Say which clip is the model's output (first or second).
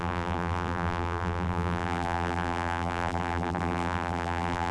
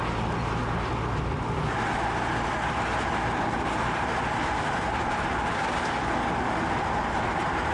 first